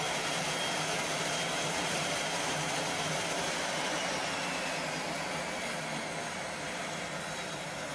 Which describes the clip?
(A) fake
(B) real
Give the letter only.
B